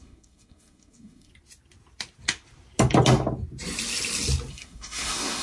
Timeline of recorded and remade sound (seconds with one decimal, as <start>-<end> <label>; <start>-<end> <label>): 0.0-1.3 remade; 1.3-4.5 recorded; 4.5-5.4 remade